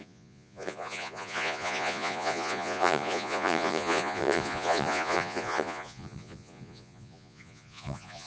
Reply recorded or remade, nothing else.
remade